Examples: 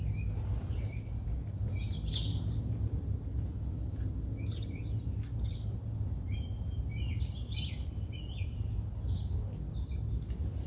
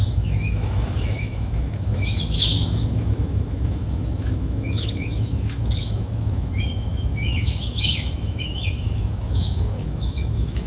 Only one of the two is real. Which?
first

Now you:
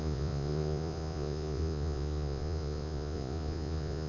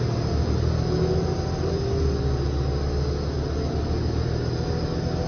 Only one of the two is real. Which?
second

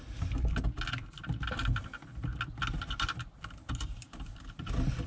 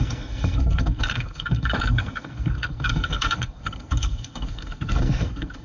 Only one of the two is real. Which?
first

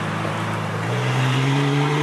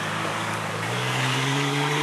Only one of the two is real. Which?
first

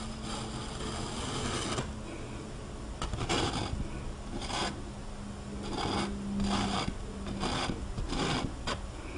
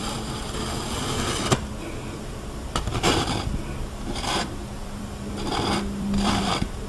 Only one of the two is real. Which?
first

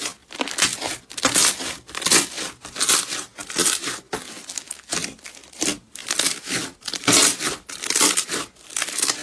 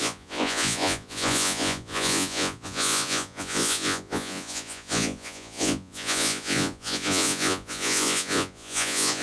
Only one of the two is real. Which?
first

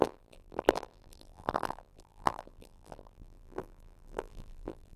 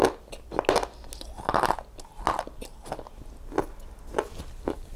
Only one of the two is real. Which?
second